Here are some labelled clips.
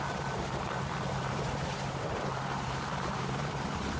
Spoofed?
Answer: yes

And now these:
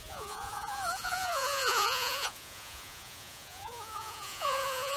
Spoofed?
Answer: yes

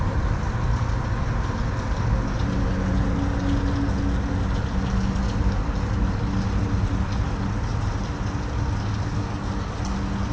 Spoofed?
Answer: no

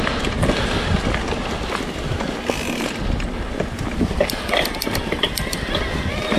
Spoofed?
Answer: no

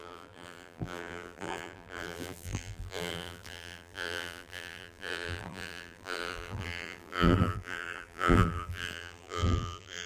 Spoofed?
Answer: yes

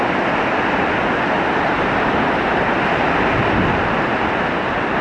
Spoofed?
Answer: no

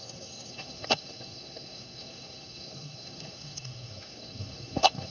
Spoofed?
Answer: yes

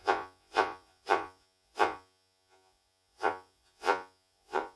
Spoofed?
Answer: yes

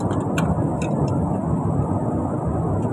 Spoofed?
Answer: no